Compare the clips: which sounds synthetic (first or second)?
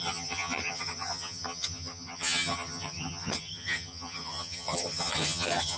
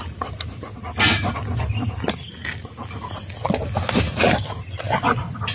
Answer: first